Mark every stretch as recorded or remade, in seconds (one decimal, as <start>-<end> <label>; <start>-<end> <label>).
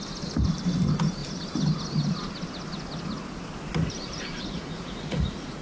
0.0-3.7 recorded; 3.7-5.6 remade